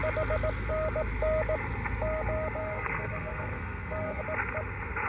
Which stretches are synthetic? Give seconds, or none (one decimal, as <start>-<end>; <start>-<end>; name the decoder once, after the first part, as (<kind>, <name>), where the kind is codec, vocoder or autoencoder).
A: 2.6-4.2 (codec, SNAC)